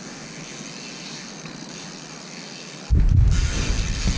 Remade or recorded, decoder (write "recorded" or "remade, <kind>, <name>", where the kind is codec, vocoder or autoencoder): recorded